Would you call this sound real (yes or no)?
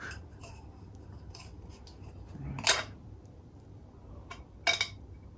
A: yes